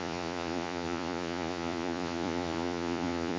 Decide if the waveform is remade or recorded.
remade